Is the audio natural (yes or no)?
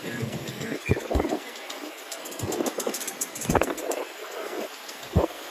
no